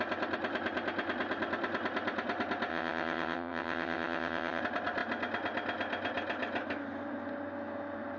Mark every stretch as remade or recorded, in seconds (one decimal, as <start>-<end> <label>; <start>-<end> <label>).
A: 0.0-2.7 recorded; 2.7-4.6 remade; 4.6-8.2 recorded